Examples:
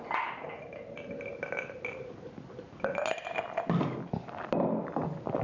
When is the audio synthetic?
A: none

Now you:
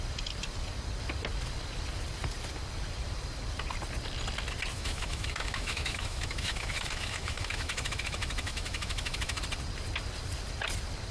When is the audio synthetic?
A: 4.7-9.4 (autoencoder, DAC-VAE)

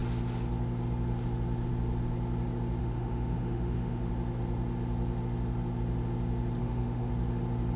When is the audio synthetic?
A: 2.8-4.1 (autoencoder, DAC-VAE); 6.6-7.1

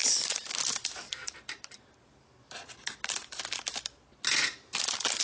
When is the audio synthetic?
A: none

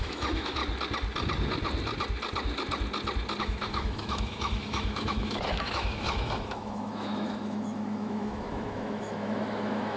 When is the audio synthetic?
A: 0.0-0.6 (autoencoder, DAC-VAE); 3.4-10.0

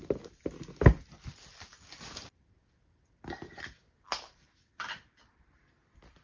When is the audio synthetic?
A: none

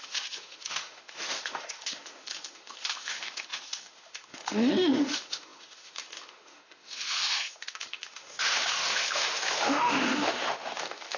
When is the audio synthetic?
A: 0.0-11.2 (autoencoder, DAC-VAE)